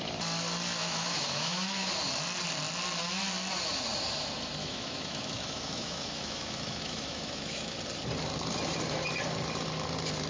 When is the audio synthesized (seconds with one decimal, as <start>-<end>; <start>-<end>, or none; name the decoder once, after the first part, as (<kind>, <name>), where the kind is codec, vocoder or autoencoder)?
0.8-1.9 (autoencoder, DAC-VAE); 4.6-7.8